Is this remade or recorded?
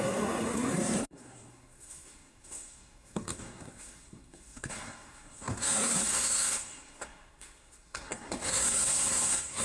remade